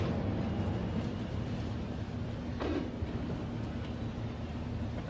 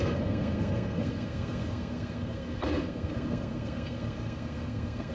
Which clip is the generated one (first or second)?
second